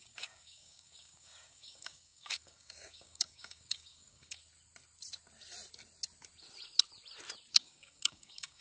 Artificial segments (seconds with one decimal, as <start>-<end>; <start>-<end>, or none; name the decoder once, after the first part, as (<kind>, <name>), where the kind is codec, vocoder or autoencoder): 0.0-4.4 (codec, DAC); 7.5-8.6